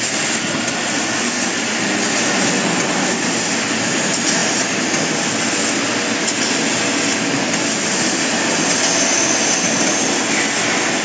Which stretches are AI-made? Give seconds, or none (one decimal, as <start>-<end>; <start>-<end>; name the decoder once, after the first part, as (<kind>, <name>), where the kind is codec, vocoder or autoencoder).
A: none

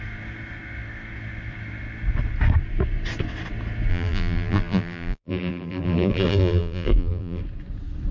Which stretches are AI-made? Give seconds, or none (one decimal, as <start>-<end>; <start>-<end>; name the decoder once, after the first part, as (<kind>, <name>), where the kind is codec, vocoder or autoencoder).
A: 3.9-7.4 (vocoder, BigVGAN v2)

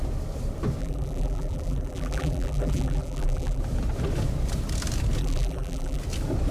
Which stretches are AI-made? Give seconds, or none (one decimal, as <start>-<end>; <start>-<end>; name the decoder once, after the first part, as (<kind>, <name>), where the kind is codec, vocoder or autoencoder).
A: 0.8-3.6 (vocoder, BigVGAN v2); 5.2-6.0

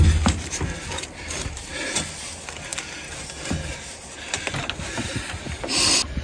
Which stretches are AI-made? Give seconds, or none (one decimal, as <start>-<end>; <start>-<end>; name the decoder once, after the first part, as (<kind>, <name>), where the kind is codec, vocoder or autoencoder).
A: 2.7-3.8 (vocoder, BigVGAN v2)

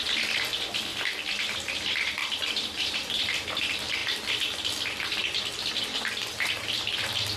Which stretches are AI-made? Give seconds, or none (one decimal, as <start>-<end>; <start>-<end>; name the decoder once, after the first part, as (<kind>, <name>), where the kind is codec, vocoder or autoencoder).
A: 2.2-2.9 (vocoder, BigVGAN v2)

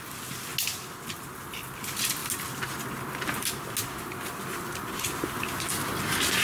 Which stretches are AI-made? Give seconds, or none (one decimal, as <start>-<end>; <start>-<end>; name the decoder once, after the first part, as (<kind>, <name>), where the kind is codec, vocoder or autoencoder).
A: none

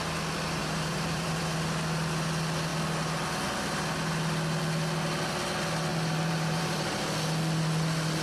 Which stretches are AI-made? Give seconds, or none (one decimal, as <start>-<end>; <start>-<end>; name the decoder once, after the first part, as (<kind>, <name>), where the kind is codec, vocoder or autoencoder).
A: 0.6-1.4 (vocoder, BigVGAN v2); 5.9-7.0

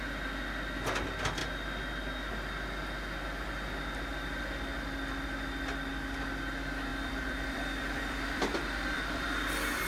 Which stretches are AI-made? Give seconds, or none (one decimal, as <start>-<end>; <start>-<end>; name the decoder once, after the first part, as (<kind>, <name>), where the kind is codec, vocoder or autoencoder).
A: 6.9-9.9 (vocoder, BigVGAN v2)